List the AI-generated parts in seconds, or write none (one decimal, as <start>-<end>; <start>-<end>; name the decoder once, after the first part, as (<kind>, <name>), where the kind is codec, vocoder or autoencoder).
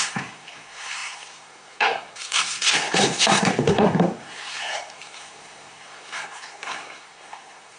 0.0-7.8 (codec, SNAC)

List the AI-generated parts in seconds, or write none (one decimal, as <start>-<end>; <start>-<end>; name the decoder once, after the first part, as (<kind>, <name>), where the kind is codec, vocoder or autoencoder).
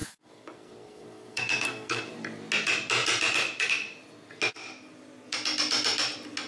0.0-2.1 (codec, SNAC)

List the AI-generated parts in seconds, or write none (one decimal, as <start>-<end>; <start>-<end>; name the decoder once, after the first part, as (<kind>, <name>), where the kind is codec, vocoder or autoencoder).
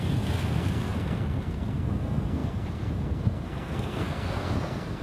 0.0-5.0 (codec, SNAC)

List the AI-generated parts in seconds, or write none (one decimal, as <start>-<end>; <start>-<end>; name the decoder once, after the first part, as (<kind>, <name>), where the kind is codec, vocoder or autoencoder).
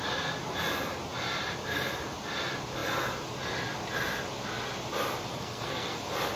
5.3-6.0 (codec, SNAC)